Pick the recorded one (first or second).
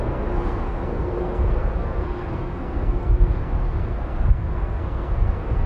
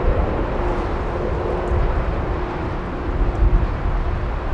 second